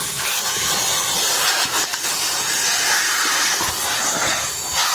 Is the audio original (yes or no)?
yes